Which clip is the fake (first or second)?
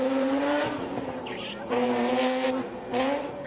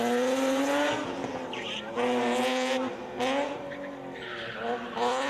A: first